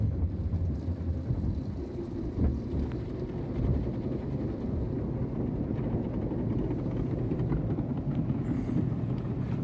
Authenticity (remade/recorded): recorded